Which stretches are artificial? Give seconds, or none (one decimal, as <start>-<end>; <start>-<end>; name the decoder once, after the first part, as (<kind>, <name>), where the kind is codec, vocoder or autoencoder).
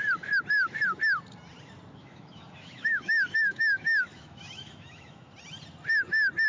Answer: 2.0-5.3 (autoencoder, DAC-VAE)